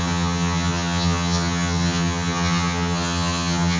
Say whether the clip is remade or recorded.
remade